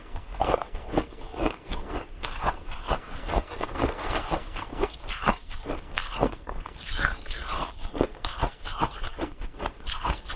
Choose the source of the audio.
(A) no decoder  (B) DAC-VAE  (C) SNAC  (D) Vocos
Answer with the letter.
C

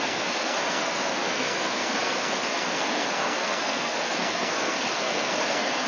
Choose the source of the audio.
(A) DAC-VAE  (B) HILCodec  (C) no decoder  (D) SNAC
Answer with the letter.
D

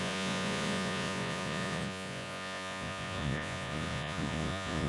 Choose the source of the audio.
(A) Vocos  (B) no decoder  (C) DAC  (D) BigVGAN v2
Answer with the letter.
A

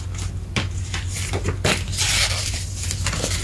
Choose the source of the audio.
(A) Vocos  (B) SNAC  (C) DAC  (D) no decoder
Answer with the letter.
D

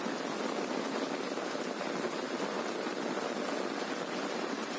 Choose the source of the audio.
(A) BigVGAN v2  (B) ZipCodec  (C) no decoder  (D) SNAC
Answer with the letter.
C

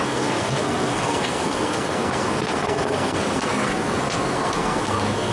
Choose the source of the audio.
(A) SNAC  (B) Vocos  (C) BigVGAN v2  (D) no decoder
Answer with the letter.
A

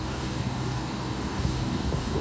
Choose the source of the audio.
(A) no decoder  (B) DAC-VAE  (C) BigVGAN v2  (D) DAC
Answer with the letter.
D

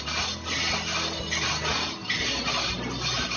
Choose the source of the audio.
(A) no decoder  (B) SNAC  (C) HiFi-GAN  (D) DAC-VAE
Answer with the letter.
A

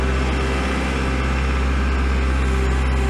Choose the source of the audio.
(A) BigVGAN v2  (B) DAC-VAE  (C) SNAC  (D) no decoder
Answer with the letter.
D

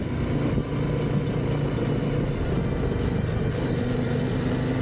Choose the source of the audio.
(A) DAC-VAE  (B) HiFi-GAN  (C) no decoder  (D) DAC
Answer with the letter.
C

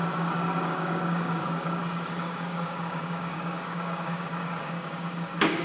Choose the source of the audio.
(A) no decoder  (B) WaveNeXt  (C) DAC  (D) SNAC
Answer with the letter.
C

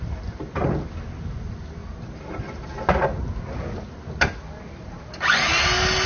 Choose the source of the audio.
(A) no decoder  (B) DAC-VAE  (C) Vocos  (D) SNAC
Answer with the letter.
A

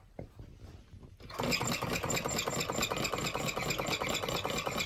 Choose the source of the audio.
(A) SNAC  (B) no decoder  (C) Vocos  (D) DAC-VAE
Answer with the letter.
B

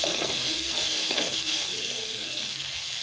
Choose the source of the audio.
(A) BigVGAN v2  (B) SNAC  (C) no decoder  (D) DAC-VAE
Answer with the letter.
B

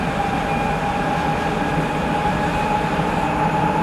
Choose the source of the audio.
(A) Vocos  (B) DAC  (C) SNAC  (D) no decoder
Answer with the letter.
D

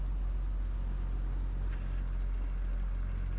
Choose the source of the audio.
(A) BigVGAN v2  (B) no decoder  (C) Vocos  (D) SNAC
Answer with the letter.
B